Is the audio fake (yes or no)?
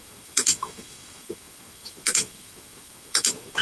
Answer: yes